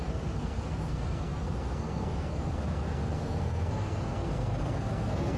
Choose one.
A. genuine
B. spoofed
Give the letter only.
B